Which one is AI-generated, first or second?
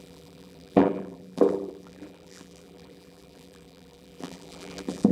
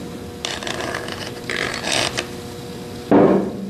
first